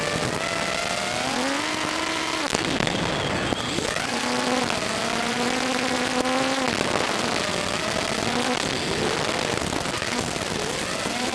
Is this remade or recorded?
recorded